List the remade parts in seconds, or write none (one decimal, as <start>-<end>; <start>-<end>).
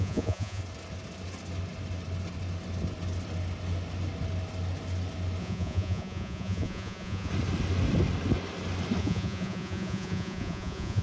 0.0-0.6; 5.4-7.3; 9.0-11.0